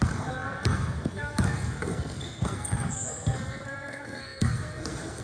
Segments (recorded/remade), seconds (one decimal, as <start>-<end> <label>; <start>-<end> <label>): 0.0-5.2 remade